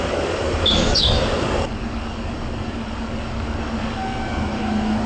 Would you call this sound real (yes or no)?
no